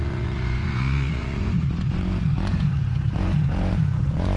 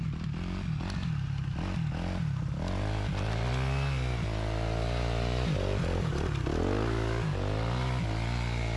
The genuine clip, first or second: second